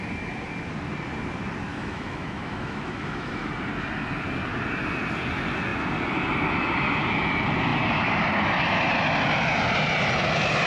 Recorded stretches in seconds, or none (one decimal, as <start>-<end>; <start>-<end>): 0.0-1.7; 3.5-10.7